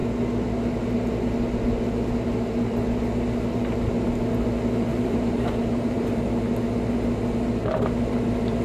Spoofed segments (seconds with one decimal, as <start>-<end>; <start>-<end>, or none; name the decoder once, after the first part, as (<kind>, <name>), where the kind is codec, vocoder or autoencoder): 4.9-6.3 (vocoder, BigVGAN v2)